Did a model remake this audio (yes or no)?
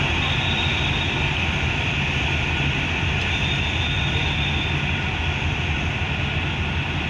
no